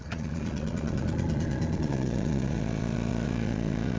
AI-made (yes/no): yes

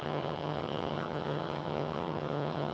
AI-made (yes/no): yes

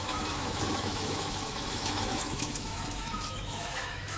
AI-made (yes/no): yes